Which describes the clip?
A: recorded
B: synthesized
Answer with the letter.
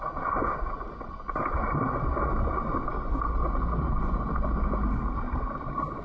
A